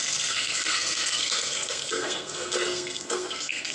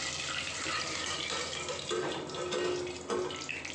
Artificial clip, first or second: first